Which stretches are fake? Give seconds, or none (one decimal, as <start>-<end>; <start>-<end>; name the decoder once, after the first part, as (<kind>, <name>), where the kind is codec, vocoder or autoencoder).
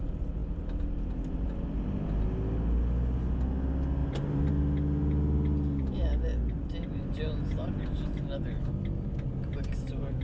4.0-4.5 (vocoder, BigVGAN v2)